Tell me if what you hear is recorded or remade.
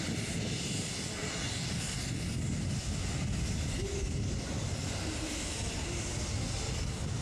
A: recorded